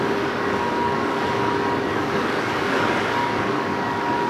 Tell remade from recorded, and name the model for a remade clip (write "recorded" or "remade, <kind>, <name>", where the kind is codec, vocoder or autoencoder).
remade, codec, DAC